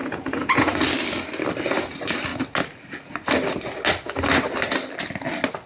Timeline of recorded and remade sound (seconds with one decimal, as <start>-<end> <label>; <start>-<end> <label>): 0.0-0.8 remade; 0.8-5.7 recorded